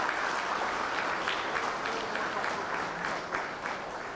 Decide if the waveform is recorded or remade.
recorded